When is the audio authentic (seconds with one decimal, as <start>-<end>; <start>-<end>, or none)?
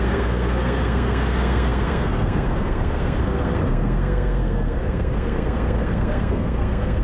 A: none